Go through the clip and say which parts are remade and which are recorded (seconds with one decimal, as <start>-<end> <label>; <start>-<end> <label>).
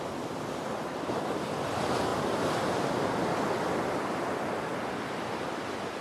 0.0-6.0 recorded